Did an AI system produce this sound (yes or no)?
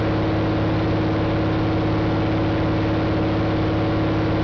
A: no